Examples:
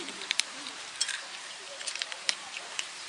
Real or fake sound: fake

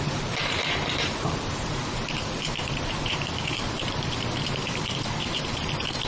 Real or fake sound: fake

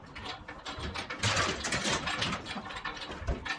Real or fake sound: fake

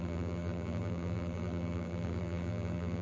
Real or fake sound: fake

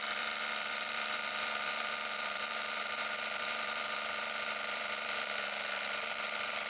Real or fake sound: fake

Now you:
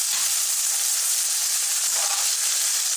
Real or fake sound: real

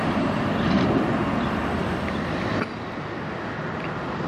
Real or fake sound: fake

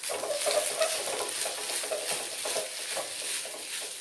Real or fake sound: real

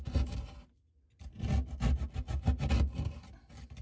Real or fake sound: real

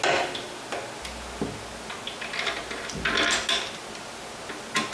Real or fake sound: real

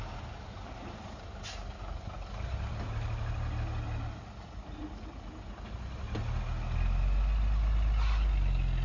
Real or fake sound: real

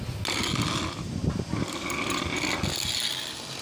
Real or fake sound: real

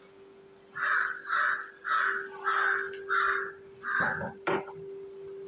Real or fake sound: real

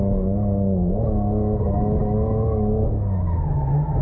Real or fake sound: real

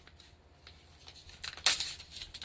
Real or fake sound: real